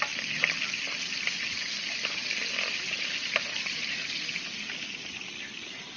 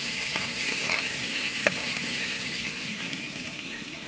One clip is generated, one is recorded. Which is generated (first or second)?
second